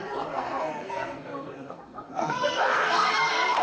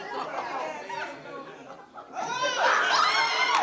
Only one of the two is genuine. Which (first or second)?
second